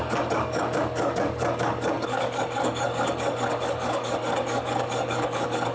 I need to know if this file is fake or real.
fake